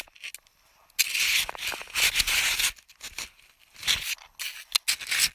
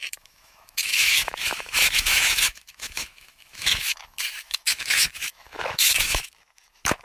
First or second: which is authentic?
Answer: first